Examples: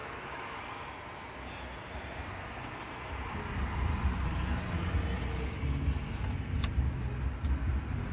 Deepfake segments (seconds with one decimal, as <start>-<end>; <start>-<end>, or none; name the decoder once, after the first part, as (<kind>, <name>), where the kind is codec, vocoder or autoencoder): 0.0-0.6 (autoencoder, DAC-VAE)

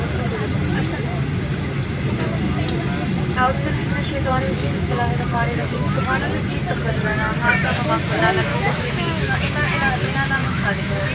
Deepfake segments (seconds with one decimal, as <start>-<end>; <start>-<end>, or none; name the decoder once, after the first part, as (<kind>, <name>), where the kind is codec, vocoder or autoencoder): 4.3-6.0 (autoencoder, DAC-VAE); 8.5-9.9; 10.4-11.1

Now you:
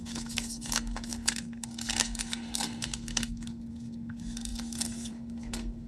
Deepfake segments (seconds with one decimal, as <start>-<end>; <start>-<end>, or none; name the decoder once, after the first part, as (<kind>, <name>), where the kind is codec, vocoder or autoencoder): 0.0-5.9 (codec, SNAC)